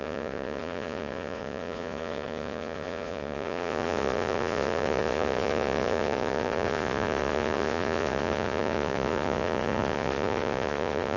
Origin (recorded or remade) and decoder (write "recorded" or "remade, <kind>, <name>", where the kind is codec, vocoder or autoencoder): remade, vocoder, Vocos